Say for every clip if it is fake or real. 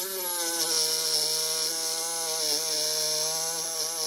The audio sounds real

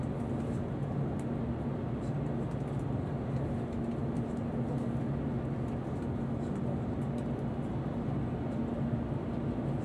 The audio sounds real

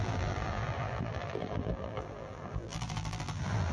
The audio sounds fake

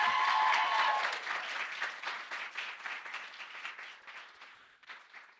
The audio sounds real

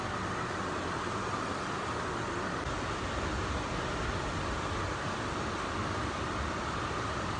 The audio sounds real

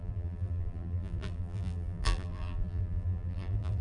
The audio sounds fake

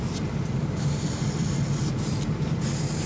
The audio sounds real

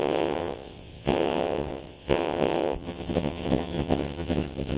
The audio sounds fake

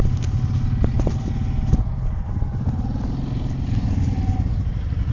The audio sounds real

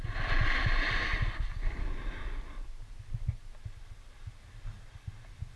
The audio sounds real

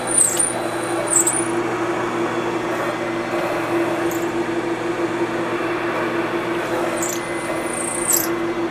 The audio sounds real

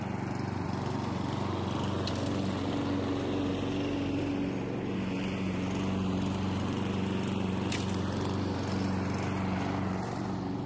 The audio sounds real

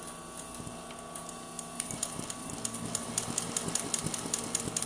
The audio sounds real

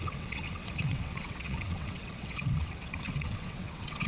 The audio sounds fake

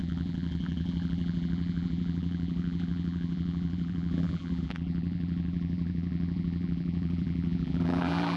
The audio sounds fake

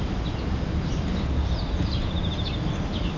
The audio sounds real